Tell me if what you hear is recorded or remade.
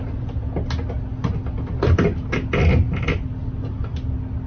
recorded